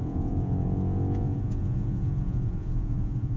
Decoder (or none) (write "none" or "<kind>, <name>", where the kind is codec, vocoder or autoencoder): vocoder, Vocos